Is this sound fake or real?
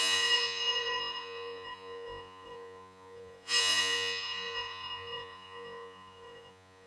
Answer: fake